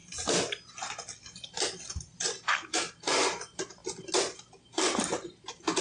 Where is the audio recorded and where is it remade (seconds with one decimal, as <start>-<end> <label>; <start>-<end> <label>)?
0.0-5.8 recorded